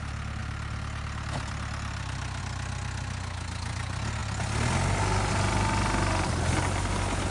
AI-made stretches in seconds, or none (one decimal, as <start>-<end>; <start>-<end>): none